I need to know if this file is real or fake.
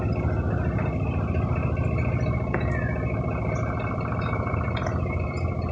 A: real